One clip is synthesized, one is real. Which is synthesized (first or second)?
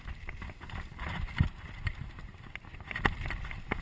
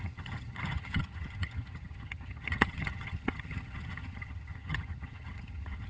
second